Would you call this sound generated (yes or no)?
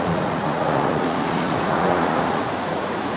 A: yes